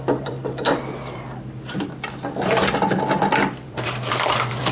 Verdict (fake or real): fake